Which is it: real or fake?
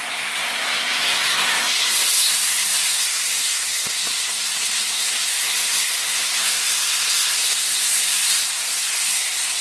fake